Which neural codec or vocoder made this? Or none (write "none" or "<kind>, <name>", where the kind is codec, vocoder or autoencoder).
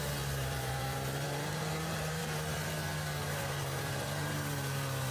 vocoder, BigVGAN v2